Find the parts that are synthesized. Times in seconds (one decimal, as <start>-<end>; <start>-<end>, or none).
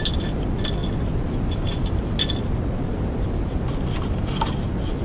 none